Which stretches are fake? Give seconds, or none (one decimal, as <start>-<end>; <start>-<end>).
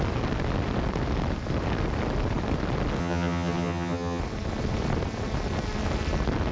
3.0-4.2